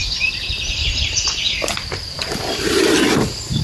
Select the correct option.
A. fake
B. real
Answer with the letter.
B